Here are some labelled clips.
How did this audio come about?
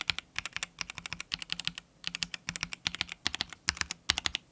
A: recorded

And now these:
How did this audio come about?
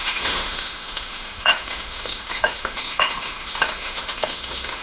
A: remade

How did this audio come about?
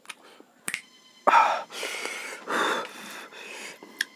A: recorded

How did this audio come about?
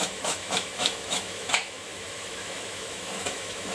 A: remade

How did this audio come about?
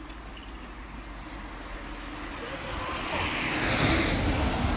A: recorded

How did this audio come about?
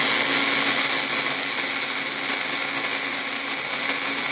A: recorded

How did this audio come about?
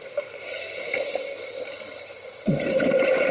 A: recorded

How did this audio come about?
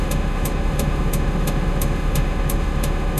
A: remade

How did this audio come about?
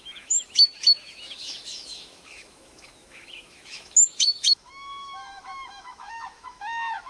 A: remade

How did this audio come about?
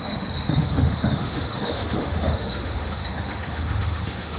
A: remade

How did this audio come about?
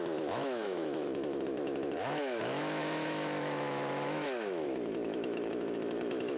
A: remade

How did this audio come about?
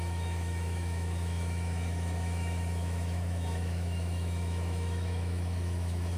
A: remade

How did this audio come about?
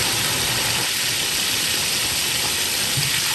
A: recorded